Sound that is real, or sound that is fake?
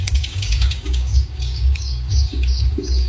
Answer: fake